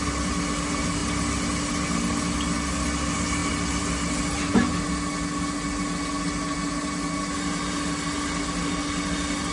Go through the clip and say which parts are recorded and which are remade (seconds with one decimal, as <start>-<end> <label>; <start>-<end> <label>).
0.0-9.5 recorded